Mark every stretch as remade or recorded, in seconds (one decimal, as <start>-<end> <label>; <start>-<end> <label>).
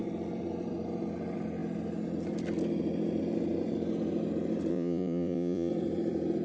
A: 0.0-4.7 recorded; 4.7-5.7 remade; 5.7-6.4 recorded